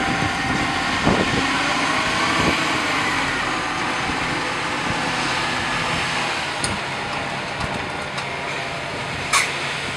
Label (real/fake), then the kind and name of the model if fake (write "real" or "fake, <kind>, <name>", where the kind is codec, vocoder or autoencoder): real